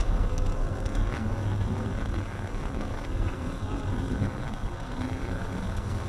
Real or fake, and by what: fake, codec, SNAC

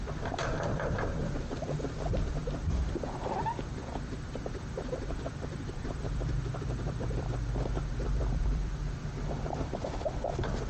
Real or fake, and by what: fake, vocoder, BigVGAN v2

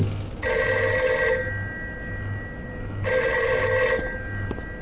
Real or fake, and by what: real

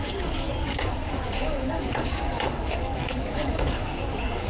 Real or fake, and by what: fake, codec, DAC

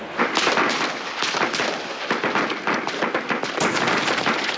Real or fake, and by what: real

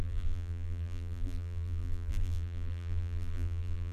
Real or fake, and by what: fake, vocoder, BigVGAN v2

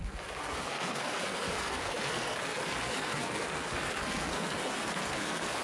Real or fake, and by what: fake, codec, SNAC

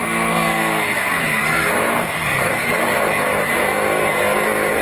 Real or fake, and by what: fake, codec, SNAC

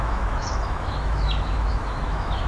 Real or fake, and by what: fake, autoencoder, DAC-VAE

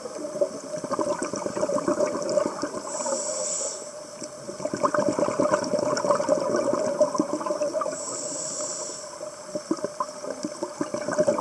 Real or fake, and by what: real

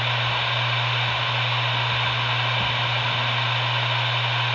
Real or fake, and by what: real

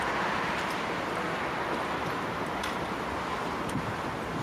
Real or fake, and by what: real